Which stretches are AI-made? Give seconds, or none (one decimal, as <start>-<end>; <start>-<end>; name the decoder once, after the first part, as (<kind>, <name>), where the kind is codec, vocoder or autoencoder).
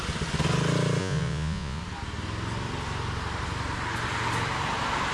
1.0-1.8 (vocoder, Vocos)